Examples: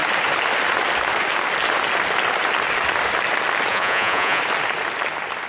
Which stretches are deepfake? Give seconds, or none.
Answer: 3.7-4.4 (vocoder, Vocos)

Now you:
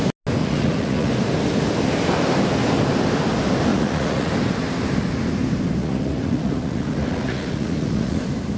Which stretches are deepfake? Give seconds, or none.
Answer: 0.4-1.1 (vocoder, Vocos); 3.7-4.3; 5.8-8.2

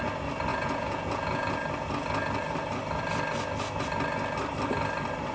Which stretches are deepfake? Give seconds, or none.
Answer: 0.5-1.5 (vocoder, Vocos)

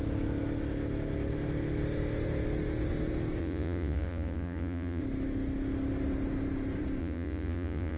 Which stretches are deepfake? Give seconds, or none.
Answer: 3.4-5.0 (vocoder, Vocos); 7.0-8.0